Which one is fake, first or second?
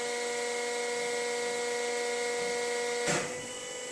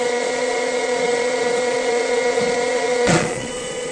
second